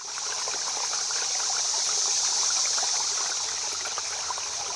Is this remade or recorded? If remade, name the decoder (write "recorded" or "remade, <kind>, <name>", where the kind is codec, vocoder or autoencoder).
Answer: recorded